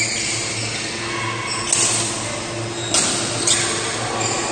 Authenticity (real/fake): real